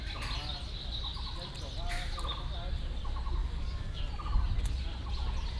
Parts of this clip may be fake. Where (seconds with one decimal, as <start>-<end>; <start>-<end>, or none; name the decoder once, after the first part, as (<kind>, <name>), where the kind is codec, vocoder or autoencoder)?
3.4-4.0 (codec, DAC)